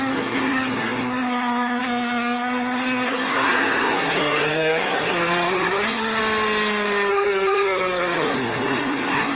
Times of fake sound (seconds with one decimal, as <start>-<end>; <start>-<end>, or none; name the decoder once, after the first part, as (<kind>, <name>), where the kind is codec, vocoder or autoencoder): 0.0-6.2 (codec, SNAC); 7.1-9.4